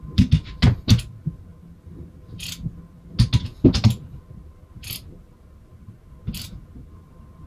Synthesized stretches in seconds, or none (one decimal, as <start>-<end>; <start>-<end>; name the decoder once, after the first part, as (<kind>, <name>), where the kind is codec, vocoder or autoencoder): none